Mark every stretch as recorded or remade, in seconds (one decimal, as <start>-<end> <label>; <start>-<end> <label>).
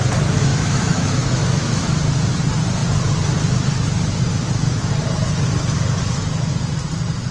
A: 0.0-0.5 recorded; 0.5-2.0 remade; 2.0-7.3 recorded